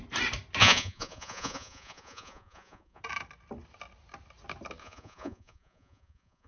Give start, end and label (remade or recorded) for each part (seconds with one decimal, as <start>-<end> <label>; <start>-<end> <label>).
0.0-0.6 recorded; 0.6-3.0 remade; 3.0-4.8 recorded; 4.8-6.5 remade